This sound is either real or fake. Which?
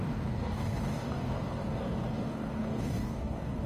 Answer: fake